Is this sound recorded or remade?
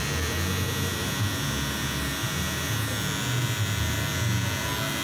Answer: recorded